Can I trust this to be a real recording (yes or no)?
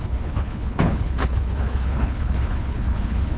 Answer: no